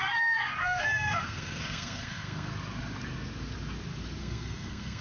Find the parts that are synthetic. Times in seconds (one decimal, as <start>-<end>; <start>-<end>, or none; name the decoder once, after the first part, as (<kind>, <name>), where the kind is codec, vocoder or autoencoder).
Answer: 0.0-2.5 (codec, SNAC); 4.2-5.0